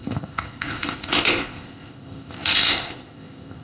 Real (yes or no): no